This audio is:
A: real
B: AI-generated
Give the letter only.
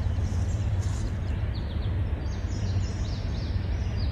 A